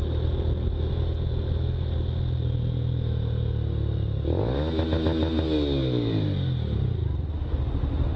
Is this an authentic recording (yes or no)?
yes